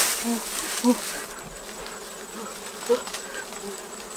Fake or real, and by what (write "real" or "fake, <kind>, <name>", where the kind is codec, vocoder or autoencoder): real